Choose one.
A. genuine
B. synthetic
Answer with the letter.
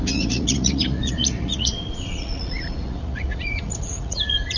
B